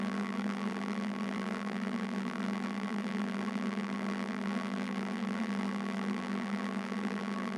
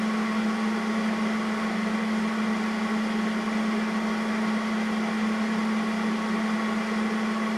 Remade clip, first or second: first